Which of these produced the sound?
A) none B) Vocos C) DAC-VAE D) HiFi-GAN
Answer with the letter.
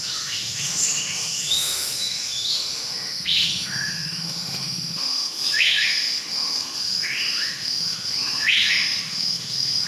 C